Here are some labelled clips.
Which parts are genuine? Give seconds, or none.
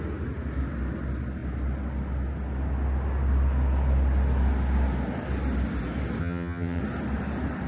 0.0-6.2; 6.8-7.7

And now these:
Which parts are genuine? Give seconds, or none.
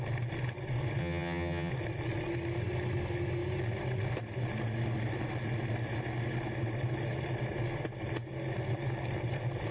0.0-1.0; 1.7-9.7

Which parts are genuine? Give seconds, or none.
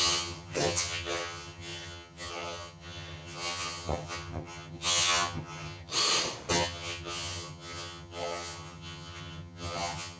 5.9-6.5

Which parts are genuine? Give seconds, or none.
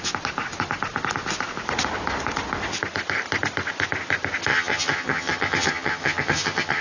0.0-4.5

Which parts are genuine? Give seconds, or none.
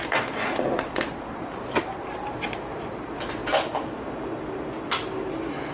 0.0-5.7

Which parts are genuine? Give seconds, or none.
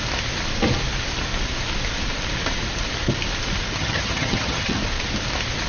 0.0-3.8; 4.8-5.7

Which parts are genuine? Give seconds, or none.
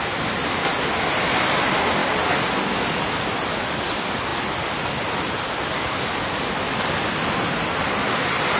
0.0-8.6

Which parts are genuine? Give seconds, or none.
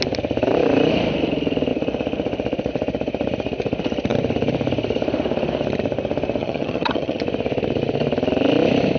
0.0-6.4; 7.2-9.0